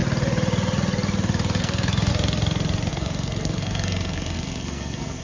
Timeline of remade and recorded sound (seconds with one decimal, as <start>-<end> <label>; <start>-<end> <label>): 0.0-1.6 recorded; 1.6-2.1 remade; 2.1-2.9 recorded; 2.9-5.2 remade